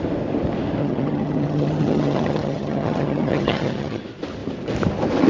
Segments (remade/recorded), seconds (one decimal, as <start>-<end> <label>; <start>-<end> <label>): 0.0-0.8 recorded; 0.8-4.0 remade; 4.0-5.3 recorded